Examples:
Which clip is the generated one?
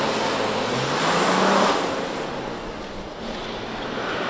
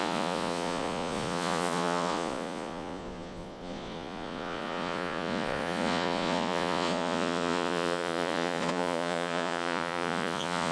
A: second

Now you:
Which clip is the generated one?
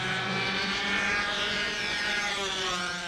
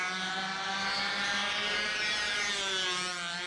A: first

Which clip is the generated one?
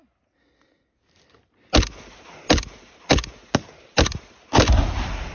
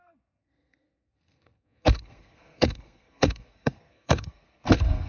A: second